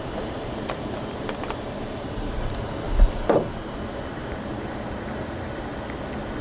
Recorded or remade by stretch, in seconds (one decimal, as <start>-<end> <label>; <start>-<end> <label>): 0.0-5.7 remade; 5.7-6.4 recorded